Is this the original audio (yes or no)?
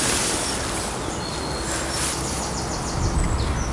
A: yes